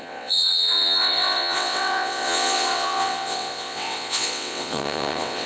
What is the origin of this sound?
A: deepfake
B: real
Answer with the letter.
A